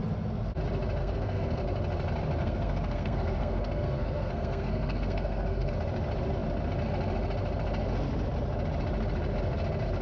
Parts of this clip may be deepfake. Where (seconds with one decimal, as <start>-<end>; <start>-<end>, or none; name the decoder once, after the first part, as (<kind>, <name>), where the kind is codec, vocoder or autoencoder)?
1.0-1.6 (codec, SNAC); 2.4-5.7